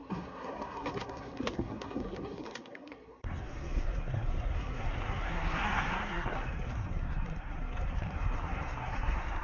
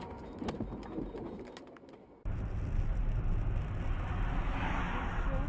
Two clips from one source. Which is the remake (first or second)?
first